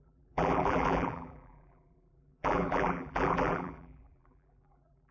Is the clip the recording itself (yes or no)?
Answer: no